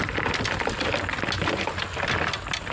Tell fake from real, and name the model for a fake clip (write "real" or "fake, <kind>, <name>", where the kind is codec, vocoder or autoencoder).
real